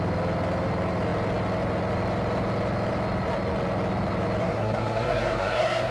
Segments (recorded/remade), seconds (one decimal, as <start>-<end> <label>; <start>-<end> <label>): 0.0-4.4 recorded; 4.4-5.9 remade